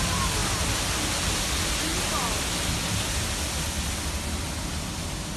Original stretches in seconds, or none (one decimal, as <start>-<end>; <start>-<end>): 0.0-5.4